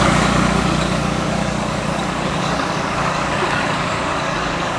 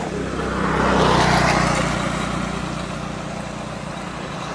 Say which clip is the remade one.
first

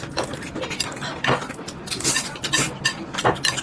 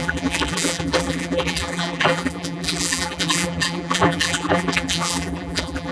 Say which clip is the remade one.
second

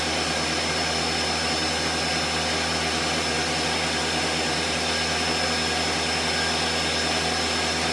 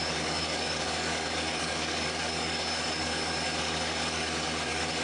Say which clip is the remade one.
second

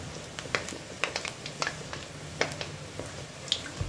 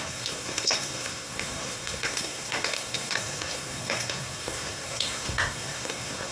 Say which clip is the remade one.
second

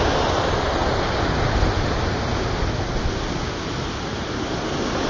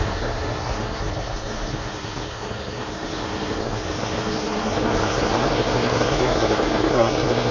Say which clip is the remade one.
second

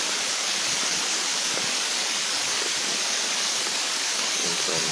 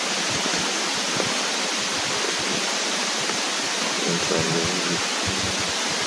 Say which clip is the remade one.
first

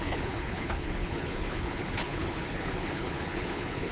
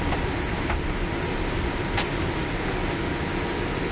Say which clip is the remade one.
first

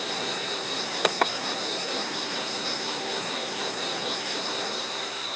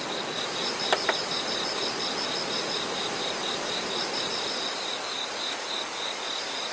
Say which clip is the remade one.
first